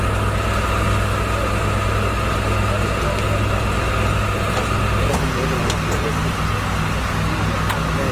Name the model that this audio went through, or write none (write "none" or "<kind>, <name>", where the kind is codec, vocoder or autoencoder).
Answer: none